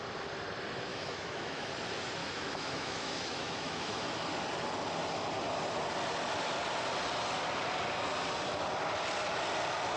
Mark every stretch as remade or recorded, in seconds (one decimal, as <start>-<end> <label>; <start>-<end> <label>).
0.0-0.9 recorded; 0.9-1.7 remade; 1.7-2.2 recorded; 2.2-4.2 remade; 4.2-10.0 recorded